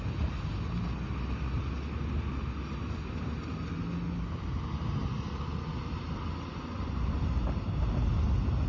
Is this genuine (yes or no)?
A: yes